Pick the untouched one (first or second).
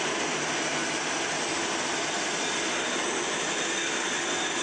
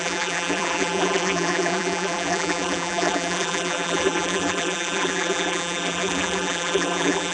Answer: first